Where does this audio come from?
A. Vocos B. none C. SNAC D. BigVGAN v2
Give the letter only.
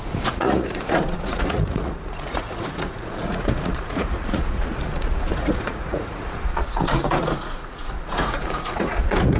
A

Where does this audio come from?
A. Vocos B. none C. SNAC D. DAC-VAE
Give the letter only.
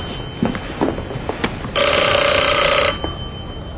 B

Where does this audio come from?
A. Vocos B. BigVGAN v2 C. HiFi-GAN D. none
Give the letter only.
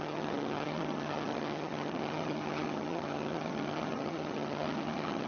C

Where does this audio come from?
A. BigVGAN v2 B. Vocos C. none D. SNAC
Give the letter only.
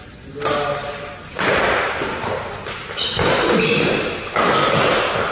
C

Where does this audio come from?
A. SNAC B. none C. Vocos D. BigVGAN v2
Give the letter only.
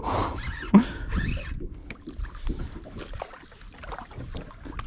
D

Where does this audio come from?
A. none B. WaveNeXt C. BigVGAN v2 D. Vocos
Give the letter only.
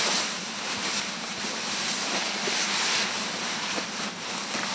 A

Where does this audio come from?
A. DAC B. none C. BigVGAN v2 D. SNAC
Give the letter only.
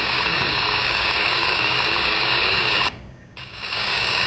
A